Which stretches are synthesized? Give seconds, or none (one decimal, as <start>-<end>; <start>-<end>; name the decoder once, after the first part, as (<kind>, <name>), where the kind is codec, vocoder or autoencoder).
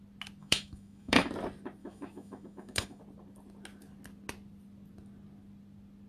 0.4-1.3 (autoencoder, DAC-VAE); 1.8-3.0